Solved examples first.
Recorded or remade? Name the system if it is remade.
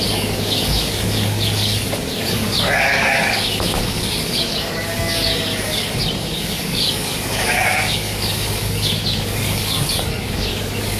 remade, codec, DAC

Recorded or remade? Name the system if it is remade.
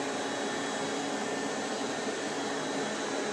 recorded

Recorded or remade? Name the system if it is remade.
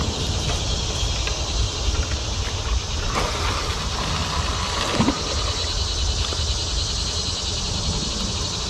recorded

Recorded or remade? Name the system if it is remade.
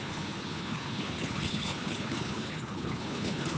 remade, codec, HILCodec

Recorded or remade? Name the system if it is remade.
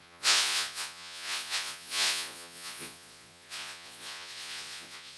remade, vocoder, Vocos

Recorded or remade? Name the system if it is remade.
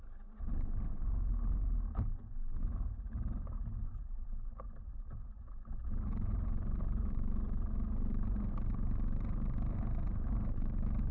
remade, vocoder, BigVGAN v2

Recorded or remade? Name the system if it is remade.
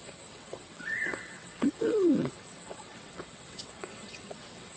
remade, vocoder, WaveNeXt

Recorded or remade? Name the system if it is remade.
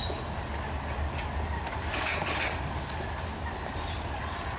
recorded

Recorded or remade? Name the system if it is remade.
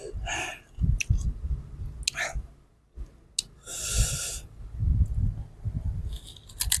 recorded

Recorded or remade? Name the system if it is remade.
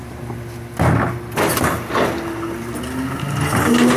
recorded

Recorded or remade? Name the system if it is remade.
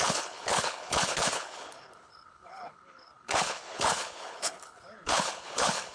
remade, codec, HILCodec